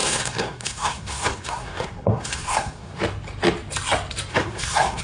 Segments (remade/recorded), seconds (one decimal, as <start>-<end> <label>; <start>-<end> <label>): 0.0-3.0 remade; 3.0-4.3 recorded; 4.3-5.0 remade